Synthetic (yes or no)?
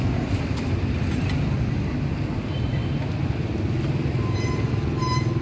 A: no